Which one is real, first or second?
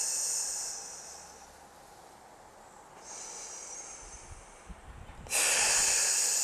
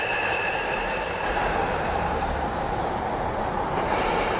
first